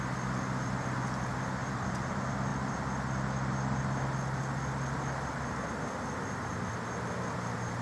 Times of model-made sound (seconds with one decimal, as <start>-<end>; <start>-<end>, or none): 1.6-2.1